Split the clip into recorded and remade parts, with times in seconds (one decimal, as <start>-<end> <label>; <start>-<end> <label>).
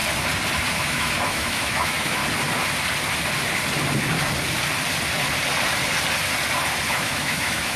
0.0-0.7 recorded; 0.7-2.2 remade; 2.2-6.9 recorded; 6.9-7.8 remade